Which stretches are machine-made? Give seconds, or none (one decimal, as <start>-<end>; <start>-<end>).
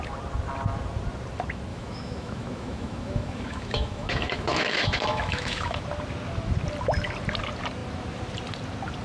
1.7-5.8